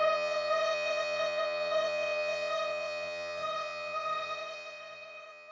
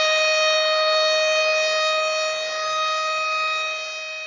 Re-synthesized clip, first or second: first